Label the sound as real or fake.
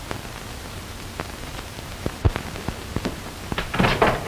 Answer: fake